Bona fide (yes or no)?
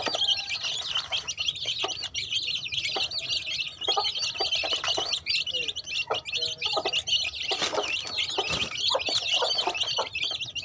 yes